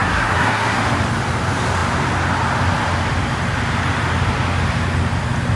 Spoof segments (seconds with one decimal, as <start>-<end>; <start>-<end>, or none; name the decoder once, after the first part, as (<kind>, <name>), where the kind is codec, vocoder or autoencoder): 0.0-0.8 (codec, SNAC)